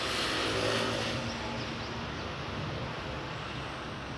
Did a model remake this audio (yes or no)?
no